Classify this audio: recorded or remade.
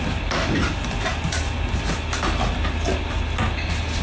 recorded